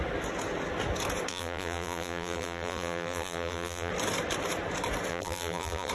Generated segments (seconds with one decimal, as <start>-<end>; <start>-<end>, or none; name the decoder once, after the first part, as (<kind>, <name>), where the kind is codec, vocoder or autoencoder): 1.3-3.9 (vocoder, BigVGAN v2); 5.1-5.9